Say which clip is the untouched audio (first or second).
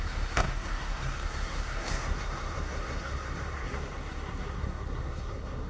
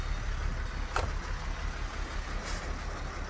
second